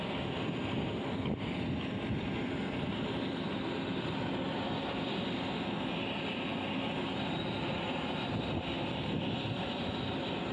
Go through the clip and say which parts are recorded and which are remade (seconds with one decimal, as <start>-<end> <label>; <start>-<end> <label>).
0.0-10.5 recorded